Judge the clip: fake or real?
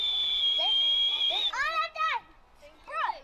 real